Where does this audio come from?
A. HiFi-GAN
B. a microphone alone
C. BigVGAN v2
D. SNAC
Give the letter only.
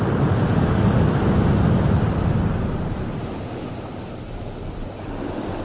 B